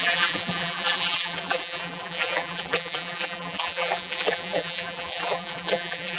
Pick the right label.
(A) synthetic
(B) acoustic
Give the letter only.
A